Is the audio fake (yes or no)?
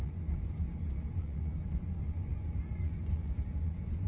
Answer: yes